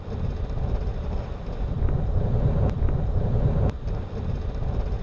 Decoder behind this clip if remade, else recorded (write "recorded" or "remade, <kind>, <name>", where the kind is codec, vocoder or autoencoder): recorded